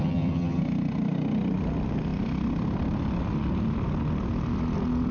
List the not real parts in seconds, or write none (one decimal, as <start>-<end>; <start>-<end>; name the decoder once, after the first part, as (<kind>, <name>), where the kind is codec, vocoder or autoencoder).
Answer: 0.0-0.6 (vocoder, HiFi-GAN)